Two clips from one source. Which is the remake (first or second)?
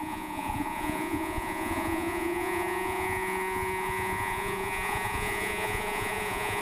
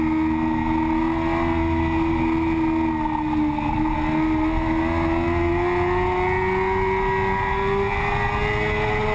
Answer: first